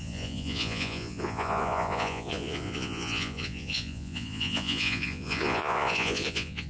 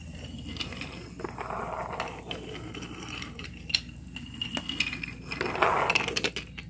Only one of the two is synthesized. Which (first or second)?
first